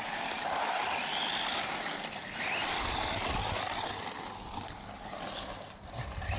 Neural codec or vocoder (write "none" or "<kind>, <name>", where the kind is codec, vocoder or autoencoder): none